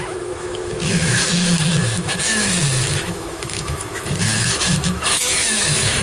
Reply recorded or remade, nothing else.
remade